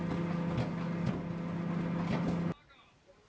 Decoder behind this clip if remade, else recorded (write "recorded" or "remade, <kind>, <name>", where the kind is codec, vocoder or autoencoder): recorded